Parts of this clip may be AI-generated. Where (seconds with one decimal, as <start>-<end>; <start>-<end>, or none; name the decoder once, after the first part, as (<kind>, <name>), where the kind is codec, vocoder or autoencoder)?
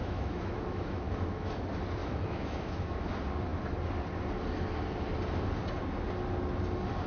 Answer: 0.0-1.6 (autoencoder, DAC-VAE); 2.0-3.1